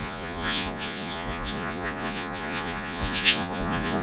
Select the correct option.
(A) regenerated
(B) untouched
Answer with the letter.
A